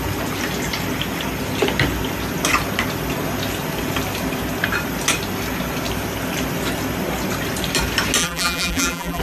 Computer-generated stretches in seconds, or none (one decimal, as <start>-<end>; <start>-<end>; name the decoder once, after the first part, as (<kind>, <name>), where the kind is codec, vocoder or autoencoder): 8.2-9.2 (vocoder, BigVGAN v2)